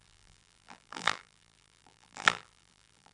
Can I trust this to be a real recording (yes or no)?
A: no